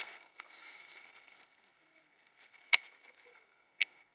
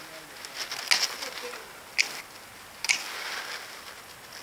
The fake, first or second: first